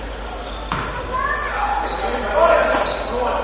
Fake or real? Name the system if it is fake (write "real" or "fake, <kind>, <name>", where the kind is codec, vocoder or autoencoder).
real